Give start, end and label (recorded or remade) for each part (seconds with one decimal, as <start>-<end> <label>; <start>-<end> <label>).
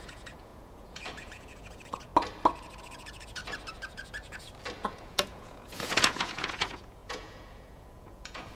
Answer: 0.0-2.1 remade; 2.1-2.8 recorded; 2.8-3.4 remade; 3.4-4.8 recorded; 4.8-8.5 remade